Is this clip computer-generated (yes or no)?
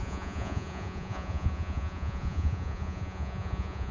yes